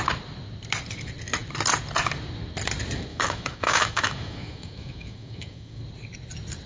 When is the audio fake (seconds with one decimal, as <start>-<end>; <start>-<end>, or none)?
3.1-5.8